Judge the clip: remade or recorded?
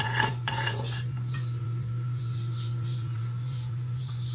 remade